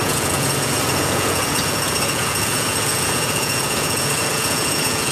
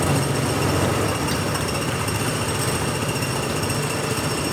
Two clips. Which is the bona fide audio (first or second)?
second